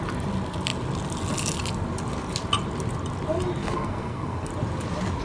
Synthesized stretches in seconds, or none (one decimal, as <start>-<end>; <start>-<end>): 3.6-4.5